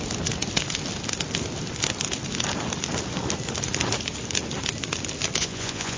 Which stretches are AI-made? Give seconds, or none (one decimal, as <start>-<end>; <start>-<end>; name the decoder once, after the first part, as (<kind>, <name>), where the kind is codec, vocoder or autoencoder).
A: 5.4-6.0 (vocoder, Vocos)